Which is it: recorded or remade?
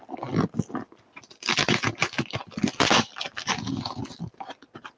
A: recorded